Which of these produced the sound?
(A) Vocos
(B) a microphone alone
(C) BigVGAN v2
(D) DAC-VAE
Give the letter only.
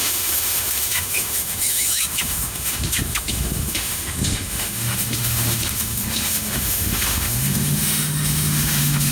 D